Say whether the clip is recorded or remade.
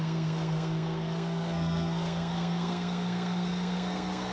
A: remade